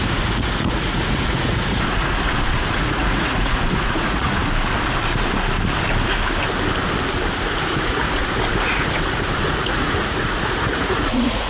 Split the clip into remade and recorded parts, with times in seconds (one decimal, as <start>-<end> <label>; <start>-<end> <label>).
0.0-4.4 remade; 4.4-7.5 recorded; 7.5-11.5 remade